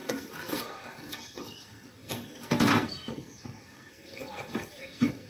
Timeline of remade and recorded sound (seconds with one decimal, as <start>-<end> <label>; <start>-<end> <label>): 0.0-5.3 remade